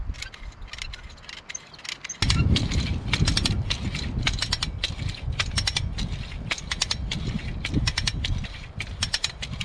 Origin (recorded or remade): recorded